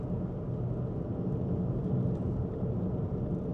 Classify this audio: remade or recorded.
recorded